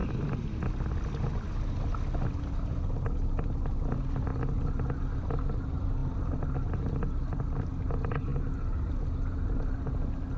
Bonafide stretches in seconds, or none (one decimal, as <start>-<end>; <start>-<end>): 0.0-10.4